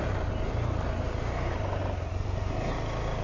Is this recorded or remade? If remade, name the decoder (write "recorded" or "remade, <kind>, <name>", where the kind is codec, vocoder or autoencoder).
recorded